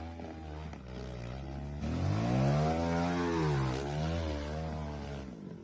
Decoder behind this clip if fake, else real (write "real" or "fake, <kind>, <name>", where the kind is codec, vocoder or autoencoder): real